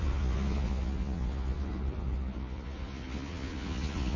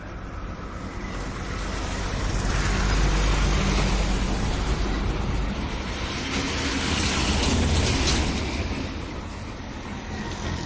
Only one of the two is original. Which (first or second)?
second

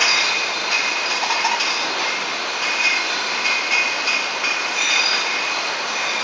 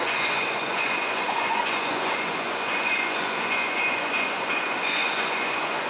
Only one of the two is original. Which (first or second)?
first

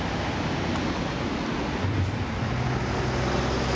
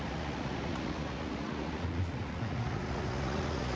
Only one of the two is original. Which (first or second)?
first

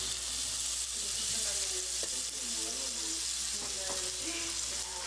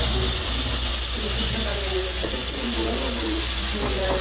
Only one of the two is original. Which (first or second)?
first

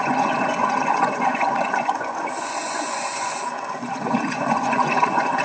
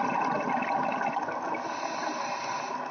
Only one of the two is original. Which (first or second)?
second